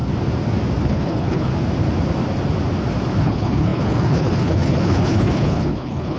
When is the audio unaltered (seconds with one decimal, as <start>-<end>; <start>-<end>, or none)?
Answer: 0.0-0.8; 1.5-3.2